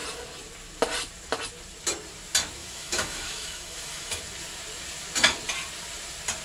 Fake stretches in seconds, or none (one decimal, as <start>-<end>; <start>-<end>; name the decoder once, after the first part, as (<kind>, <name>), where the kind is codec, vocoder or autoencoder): 2.6-4.2 (autoencoder, DAC-VAE)